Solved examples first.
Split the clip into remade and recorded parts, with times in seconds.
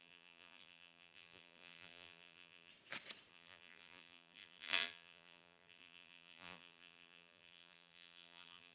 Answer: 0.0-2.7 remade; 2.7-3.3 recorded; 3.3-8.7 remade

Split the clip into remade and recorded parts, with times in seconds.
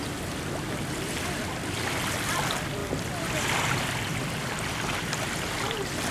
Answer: 0.0-6.1 recorded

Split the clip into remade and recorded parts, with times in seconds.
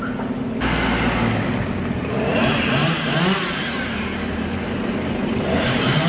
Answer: 0.0-2.8 recorded; 2.8-6.1 remade